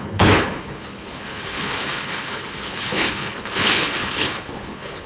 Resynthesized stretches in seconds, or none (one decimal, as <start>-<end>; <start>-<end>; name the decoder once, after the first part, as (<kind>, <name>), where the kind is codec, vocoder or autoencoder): 0.0-5.1 (codec, HILCodec)